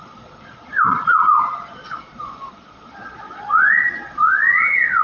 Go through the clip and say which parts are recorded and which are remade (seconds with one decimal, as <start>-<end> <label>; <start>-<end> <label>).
0.0-5.0 remade